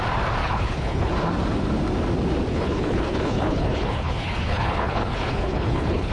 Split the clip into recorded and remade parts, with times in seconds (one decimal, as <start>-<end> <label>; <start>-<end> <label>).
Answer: 0.0-0.4 recorded; 0.4-1.1 remade; 1.1-2.5 recorded; 2.5-6.1 remade